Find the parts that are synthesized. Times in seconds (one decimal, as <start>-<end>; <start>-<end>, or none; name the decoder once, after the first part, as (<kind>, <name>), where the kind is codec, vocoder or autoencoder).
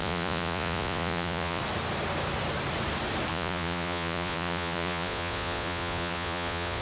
0.0-1.6 (vocoder, Vocos); 3.3-6.8